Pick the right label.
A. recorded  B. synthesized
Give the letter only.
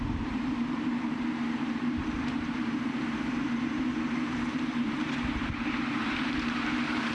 B